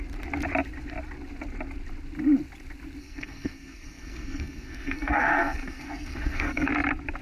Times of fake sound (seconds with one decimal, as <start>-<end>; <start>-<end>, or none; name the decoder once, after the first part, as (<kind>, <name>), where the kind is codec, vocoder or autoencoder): 3.0-6.7 (codec, SNAC)